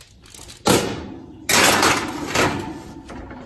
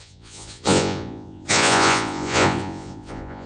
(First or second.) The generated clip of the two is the second